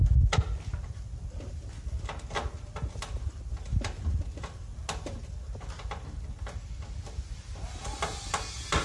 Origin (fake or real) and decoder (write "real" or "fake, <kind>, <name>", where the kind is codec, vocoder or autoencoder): real